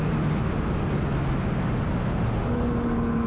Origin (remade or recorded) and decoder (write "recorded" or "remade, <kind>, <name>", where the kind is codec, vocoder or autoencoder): recorded